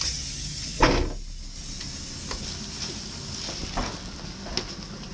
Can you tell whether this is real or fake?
real